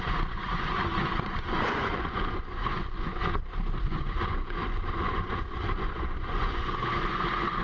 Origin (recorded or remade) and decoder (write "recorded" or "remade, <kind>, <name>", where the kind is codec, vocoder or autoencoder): remade, vocoder, Vocos